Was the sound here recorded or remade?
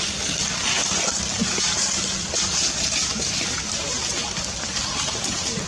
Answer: recorded